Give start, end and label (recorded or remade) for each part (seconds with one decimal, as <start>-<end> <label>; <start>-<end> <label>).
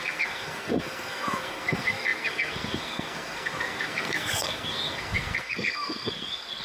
0.0-6.6 remade